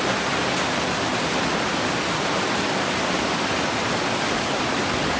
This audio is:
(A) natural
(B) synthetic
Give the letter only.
A